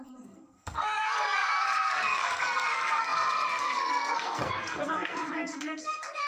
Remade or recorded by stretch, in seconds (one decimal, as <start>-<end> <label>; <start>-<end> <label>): 0.0-6.3 remade